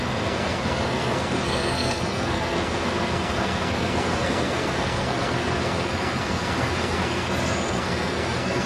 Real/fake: fake